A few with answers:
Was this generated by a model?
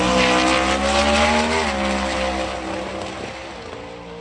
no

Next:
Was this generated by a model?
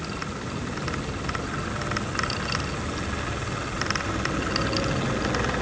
no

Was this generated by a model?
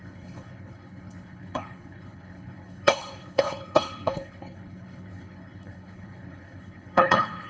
yes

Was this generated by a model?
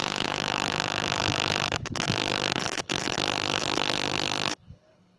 yes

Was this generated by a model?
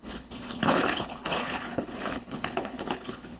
yes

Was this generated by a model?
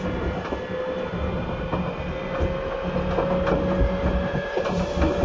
no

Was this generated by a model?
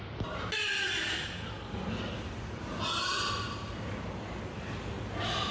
no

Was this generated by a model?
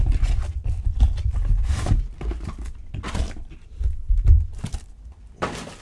no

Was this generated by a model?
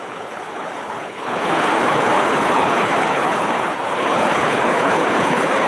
yes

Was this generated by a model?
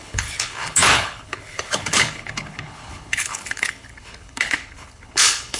yes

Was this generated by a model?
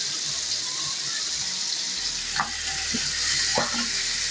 no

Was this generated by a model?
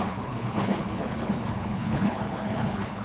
yes